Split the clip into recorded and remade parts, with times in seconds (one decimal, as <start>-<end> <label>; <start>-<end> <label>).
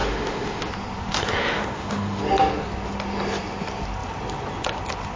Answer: 0.0-0.7 remade; 0.7-1.4 recorded; 1.4-2.2 remade; 2.2-5.2 recorded